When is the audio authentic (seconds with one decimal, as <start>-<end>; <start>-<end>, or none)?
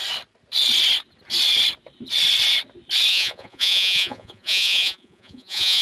0.0-3.1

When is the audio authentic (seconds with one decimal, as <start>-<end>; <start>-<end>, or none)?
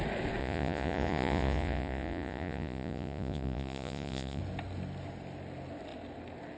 0.0-0.4; 4.4-6.6